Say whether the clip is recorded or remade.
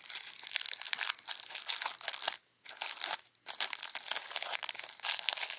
recorded